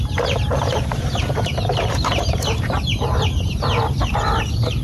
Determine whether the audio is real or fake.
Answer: fake